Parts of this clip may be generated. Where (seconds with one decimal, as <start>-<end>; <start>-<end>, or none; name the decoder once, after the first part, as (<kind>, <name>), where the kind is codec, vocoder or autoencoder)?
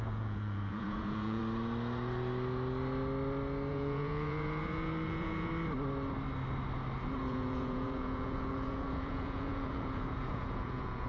0.0-1.4 (vocoder, Vocos); 3.7-5.5; 7.2-11.1